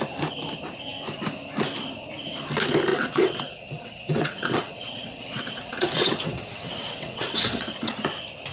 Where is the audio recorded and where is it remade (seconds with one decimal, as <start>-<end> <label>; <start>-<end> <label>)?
0.0-2.9 recorded; 2.9-8.0 remade; 8.0-8.5 recorded